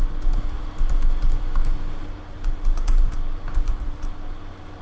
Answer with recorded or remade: recorded